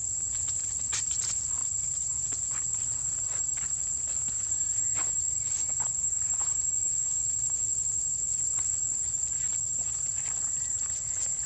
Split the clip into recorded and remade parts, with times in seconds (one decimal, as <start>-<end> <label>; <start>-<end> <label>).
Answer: 0.0-8.3 recorded; 8.3-9.1 remade; 9.1-11.5 recorded